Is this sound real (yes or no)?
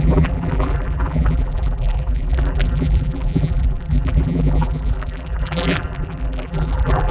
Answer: no